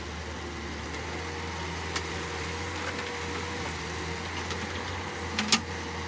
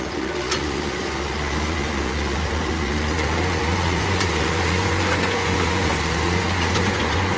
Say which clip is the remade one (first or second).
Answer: second